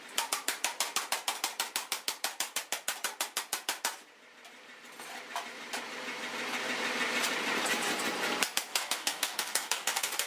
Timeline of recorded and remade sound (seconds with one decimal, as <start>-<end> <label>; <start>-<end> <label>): 0.0-8.7 recorded; 8.7-10.3 remade